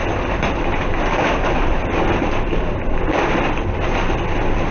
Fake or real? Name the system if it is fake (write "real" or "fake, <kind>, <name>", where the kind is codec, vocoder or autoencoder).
fake, vocoder, BigVGAN v2